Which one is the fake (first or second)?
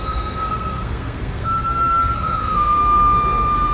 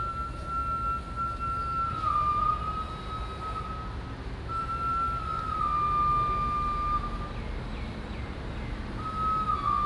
first